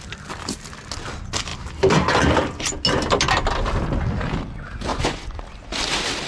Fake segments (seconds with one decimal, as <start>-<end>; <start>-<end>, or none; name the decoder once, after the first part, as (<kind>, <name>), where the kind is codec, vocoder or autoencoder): 4.9-5.4 (vocoder, Vocos)